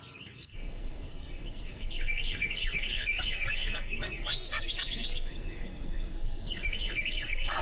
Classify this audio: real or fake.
fake